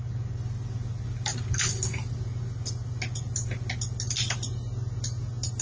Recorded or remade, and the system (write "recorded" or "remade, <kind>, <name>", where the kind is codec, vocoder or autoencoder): recorded